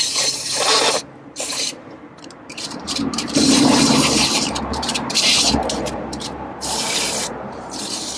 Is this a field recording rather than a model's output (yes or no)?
no